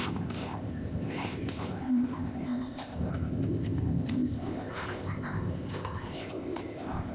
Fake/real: fake